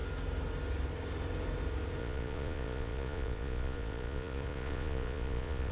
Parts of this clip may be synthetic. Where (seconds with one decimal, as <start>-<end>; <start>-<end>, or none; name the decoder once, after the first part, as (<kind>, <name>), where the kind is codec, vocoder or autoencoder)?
2.0-5.7 (vocoder, Vocos)